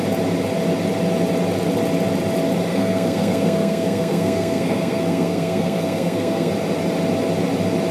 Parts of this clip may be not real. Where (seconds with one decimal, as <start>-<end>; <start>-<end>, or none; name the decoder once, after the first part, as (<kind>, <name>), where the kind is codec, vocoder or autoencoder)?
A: 2.7-6.5 (codec, SNAC)